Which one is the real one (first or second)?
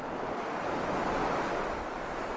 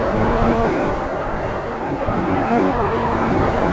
first